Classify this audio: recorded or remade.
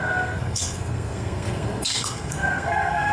remade